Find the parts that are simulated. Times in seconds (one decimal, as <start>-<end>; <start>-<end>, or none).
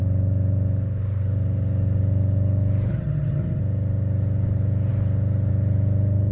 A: 2.9-3.6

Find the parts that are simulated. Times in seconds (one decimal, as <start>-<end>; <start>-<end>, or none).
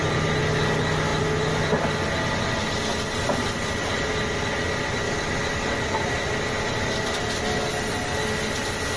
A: none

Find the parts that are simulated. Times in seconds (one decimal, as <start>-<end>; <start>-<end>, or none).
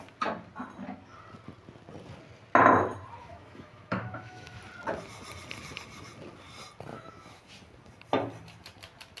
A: 3.2-4.6; 6.9-7.4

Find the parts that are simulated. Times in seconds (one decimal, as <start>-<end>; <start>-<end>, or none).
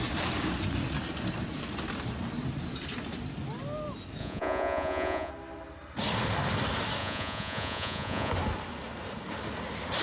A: 4.2-5.3; 7.0-8.3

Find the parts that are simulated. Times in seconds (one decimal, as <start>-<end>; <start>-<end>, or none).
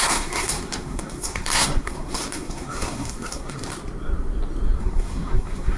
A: 0.0-3.7; 4.8-5.8